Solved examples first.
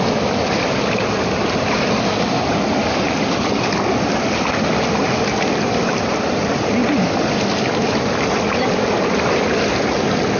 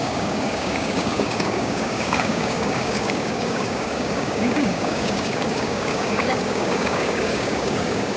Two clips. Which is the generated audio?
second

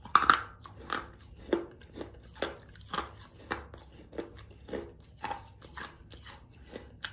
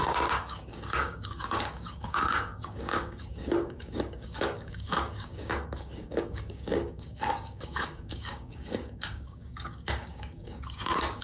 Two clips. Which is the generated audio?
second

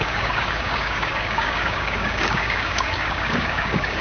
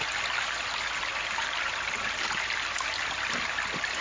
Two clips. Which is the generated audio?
first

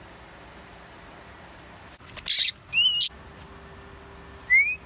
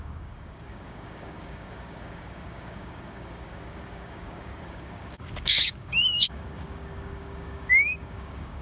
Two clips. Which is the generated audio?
second